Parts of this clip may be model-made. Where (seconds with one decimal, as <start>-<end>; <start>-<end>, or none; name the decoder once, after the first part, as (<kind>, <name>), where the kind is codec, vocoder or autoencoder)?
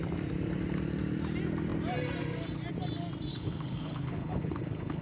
3.3-5.0 (codec, HILCodec)